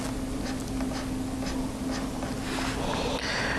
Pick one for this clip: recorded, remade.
recorded